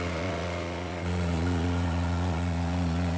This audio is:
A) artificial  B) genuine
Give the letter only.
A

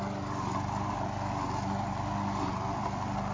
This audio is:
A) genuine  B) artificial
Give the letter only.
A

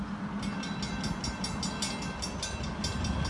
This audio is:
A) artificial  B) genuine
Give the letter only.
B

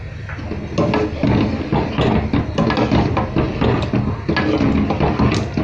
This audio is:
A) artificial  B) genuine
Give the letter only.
B